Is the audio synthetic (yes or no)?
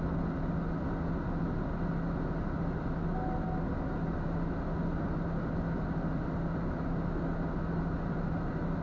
no